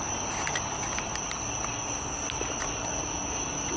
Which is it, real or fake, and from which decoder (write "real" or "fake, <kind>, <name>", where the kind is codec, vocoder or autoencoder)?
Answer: real